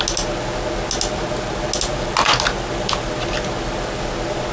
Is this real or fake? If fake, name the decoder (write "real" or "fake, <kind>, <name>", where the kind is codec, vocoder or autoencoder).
real